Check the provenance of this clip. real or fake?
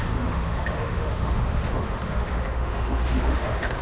fake